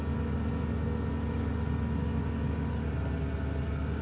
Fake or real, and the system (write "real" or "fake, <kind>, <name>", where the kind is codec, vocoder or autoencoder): real